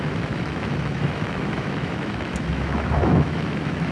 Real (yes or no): no